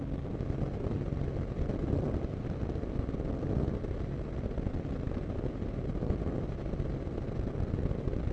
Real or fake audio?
real